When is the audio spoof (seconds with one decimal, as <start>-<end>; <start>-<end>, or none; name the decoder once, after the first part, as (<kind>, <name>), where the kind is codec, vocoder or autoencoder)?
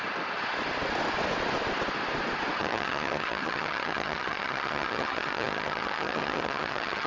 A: 2.6-7.1 (vocoder, HiFi-GAN)